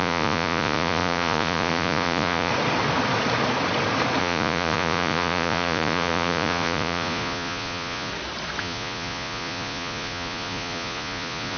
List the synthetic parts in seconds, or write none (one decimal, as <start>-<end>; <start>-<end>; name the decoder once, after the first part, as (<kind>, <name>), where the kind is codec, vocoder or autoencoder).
0.0-2.5 (vocoder, Vocos); 4.2-8.1; 8.6-11.6